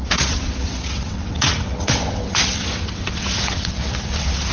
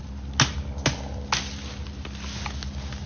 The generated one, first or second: first